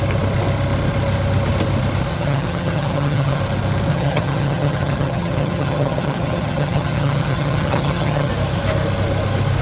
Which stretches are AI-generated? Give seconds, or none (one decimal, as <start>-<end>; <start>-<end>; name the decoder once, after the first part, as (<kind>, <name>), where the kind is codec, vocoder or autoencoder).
2.1-3.4 (vocoder, HiFi-GAN); 3.9-8.3